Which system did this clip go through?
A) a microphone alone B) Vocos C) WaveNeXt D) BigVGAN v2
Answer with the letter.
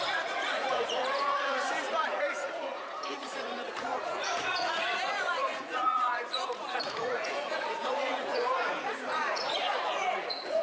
B